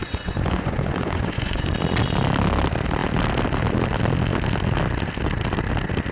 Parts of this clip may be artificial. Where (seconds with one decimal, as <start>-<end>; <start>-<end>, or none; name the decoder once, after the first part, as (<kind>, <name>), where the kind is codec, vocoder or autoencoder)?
0.0-1.7 (vocoder, Vocos)